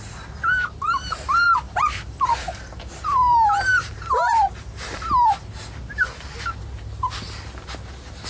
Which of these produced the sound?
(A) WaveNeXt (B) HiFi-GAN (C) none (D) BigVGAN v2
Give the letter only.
C